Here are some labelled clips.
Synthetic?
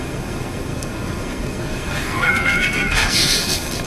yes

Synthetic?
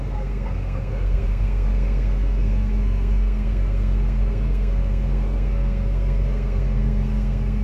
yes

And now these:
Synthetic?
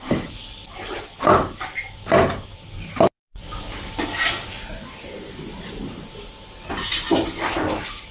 no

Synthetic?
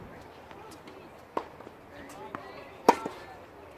no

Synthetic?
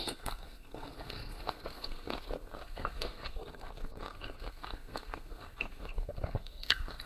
yes